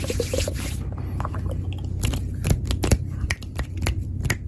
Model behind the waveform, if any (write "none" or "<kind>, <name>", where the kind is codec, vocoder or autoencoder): none